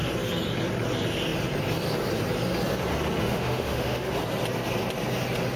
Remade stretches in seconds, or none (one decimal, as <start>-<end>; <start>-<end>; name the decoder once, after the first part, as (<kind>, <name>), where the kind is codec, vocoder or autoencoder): 3.2-4.1 (autoencoder, DAC-VAE)